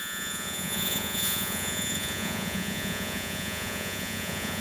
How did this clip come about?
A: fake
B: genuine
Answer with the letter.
A